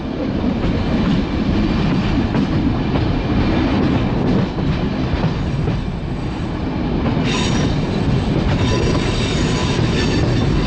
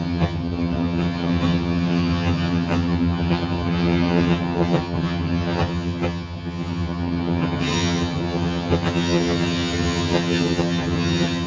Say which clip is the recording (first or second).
first